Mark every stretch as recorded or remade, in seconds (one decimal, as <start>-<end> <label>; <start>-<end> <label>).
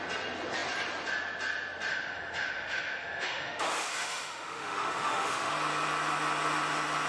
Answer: 0.0-1.9 recorded; 1.9-5.5 remade; 5.5-7.1 recorded